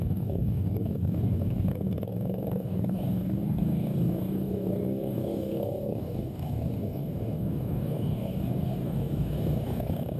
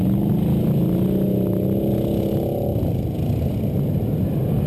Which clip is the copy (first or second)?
first